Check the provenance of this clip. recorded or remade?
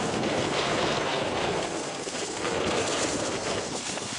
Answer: remade